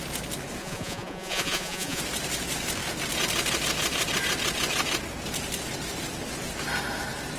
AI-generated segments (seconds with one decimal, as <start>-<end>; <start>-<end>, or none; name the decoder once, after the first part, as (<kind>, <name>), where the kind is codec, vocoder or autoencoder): 0.6-2.0 (vocoder, Vocos)